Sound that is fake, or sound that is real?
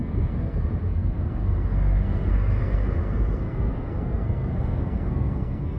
fake